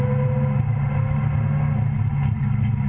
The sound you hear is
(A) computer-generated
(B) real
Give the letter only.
B